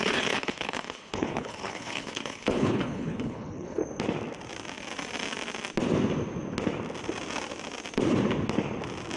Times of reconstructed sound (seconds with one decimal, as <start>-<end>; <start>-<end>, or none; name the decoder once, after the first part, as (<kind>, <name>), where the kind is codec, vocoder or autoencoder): 0.0-3.8 (codec, HILCodec)